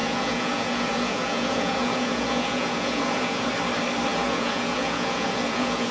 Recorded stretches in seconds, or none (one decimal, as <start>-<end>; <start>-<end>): 3.5-4.1